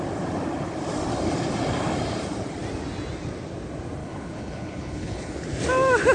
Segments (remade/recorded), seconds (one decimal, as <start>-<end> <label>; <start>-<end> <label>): 0.0-4.0 recorded; 4.0-5.3 remade; 5.3-6.1 recorded